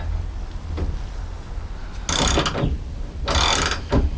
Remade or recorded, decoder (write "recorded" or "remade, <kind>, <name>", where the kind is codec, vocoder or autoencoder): recorded